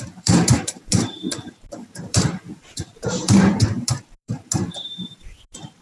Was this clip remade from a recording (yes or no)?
yes